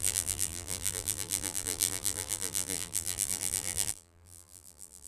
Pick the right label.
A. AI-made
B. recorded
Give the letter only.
A